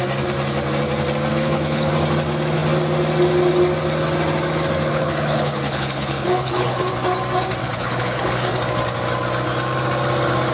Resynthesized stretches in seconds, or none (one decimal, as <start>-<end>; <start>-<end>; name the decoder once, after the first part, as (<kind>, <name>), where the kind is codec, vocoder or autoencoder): 1.3-1.9 (codec, HILCodec); 4.9-6.9; 7.6-8.5